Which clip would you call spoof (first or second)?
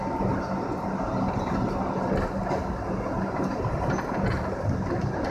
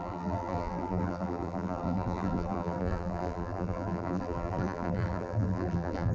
second